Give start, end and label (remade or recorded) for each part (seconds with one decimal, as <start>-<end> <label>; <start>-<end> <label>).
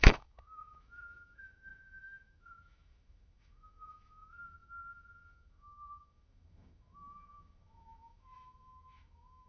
0.0-9.5 remade